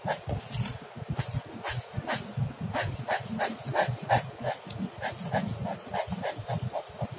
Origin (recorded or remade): remade